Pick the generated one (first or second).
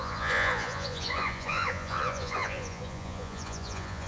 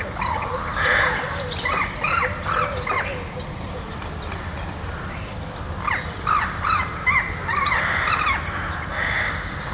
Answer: first